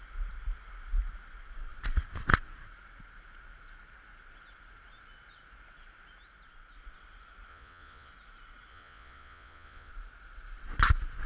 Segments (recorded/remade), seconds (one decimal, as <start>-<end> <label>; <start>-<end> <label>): 0.0-7.5 recorded; 7.5-8.1 remade; 8.1-8.7 recorded; 8.7-9.9 remade; 9.9-11.3 recorded